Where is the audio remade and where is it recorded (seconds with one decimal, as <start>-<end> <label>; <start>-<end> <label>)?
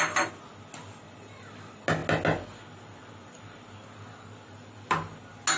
0.0-5.6 recorded